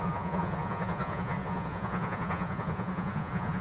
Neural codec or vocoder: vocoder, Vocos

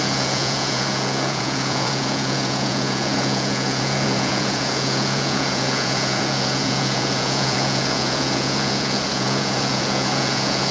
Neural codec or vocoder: vocoder, Vocos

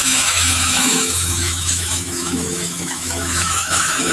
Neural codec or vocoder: autoencoder, DAC-VAE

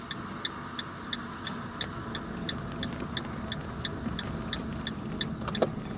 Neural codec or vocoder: none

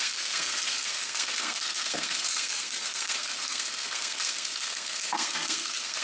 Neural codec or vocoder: codec, SNAC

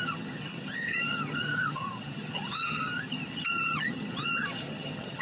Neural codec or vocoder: vocoder, HiFi-GAN